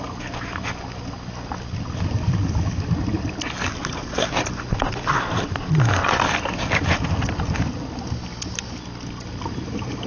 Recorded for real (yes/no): yes